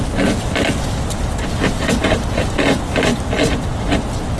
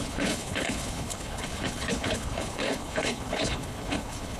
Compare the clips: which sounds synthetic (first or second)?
second